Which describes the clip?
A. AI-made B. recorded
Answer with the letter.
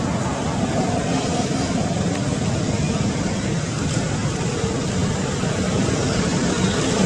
B